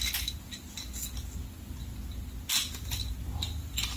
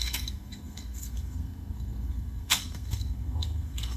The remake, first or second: second